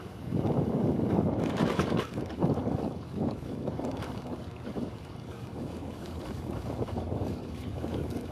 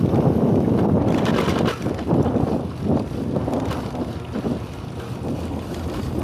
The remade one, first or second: first